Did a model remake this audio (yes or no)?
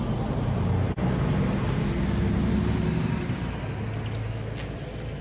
no